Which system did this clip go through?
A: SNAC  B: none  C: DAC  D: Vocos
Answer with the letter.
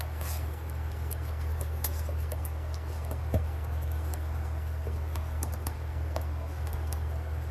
A